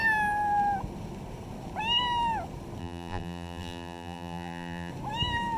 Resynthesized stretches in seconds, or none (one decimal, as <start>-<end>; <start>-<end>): 2.8-4.9